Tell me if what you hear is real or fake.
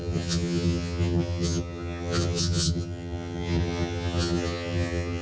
fake